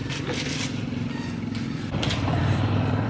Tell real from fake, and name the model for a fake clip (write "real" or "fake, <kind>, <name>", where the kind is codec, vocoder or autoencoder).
fake, vocoder, BigVGAN v2